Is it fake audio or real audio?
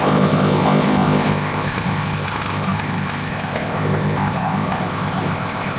fake